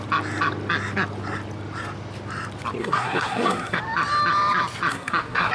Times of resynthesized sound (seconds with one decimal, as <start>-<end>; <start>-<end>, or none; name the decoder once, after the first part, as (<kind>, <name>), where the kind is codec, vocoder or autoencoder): 2.8-3.8 (codec, SNAC); 4.9-5.5